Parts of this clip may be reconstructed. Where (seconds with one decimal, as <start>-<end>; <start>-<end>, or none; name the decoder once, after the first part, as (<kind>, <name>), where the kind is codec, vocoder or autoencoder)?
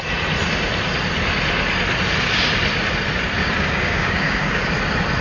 3.4-4.7 (codec, DAC)